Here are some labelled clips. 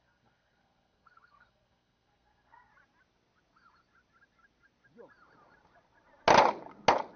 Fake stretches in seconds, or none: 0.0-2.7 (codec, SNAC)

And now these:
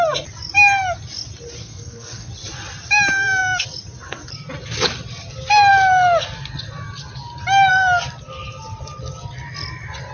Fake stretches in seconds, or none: 1.6-2.3 (codec, SNAC)

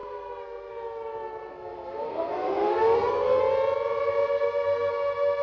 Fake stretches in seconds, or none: 0.0-0.7 (codec, SNAC); 1.5-3.4; 4.2-4.9

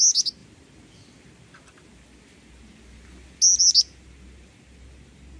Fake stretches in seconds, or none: none

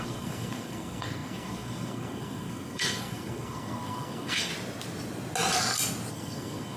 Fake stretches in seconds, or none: 0.0-4.5 (codec, SNAC); 6.1-6.8